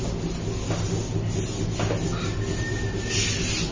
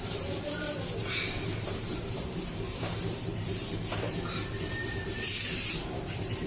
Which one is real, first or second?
first